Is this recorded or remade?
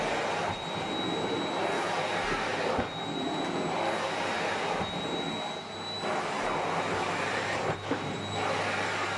recorded